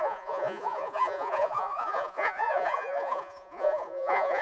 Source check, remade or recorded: remade